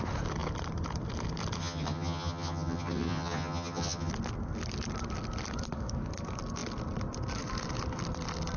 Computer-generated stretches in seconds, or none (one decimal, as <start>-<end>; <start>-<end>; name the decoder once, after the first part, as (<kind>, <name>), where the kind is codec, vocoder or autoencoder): 1.6-4.1 (vocoder, HiFi-GAN)